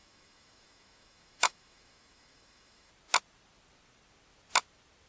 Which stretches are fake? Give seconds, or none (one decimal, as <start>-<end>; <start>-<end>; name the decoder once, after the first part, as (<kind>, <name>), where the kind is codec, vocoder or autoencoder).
0.0-2.9 (autoencoder, DAC-VAE)